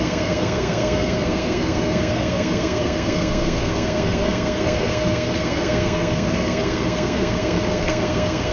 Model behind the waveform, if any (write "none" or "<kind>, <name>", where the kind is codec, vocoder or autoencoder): codec, SNAC